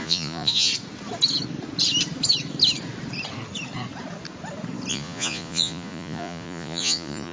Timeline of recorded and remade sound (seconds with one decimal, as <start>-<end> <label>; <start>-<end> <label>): 0.0-0.7 remade; 0.7-4.9 recorded; 4.9-7.3 remade